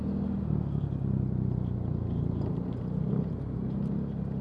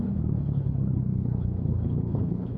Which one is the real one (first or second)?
first